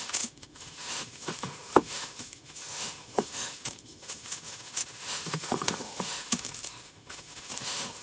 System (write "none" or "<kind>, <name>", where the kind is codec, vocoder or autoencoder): autoencoder, DAC-VAE